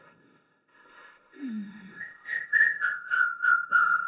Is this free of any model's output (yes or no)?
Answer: no